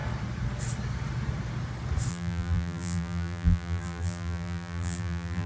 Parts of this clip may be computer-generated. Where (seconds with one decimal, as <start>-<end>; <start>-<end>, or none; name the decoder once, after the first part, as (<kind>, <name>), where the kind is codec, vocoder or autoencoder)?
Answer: 2.1-5.5 (vocoder, BigVGAN v2)

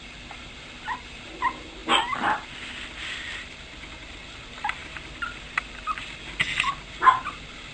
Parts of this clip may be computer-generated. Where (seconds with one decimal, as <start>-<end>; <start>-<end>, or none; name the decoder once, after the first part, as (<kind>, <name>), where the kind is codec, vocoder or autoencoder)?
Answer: 4.8-6.2 (vocoder, BigVGAN v2)